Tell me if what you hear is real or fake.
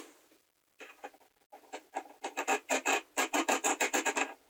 fake